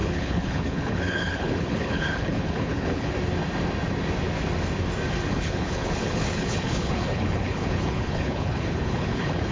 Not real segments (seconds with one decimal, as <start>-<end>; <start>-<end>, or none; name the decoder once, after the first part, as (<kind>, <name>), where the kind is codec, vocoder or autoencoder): 0.0-3.1 (codec, HILCodec); 5.3-9.5